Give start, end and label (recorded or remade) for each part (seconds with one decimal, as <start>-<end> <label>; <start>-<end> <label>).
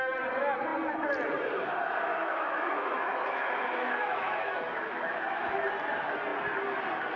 0.0-2.1 recorded; 2.1-5.7 remade; 5.7-7.2 recorded